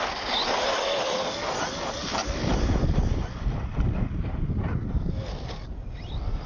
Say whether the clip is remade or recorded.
recorded